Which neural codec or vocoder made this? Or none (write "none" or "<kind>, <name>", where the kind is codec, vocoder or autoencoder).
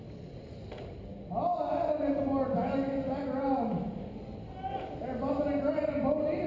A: none